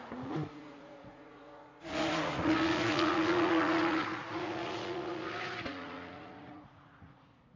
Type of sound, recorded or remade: remade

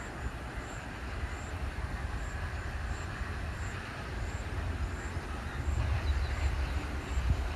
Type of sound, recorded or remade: recorded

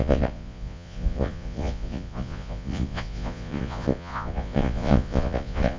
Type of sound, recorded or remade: remade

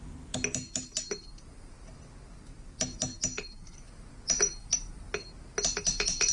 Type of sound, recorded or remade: recorded